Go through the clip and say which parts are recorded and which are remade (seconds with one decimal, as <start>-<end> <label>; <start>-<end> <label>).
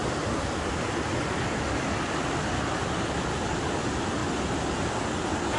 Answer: 0.0-5.6 recorded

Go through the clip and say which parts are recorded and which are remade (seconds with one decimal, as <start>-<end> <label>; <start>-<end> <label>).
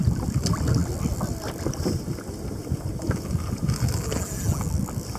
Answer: 0.0-5.2 recorded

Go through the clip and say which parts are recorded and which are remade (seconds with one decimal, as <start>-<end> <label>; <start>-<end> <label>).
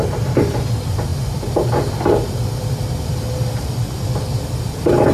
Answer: 0.0-5.1 recorded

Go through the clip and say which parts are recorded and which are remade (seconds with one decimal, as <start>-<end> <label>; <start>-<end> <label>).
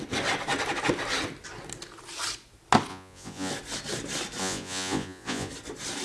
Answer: 0.0-2.9 recorded; 2.9-3.5 remade; 3.5-4.4 recorded; 4.4-5.5 remade; 5.5-6.0 recorded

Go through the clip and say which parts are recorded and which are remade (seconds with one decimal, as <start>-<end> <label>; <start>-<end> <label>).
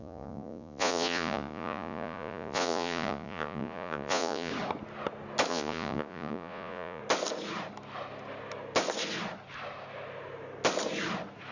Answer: 0.0-4.5 remade; 4.5-5.5 recorded; 5.5-7.0 remade; 7.0-11.5 recorded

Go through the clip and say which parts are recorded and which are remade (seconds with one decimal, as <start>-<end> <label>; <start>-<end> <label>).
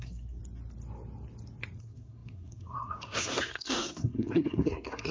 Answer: 0.0-0.4 remade; 0.4-1.8 recorded; 1.8-5.1 remade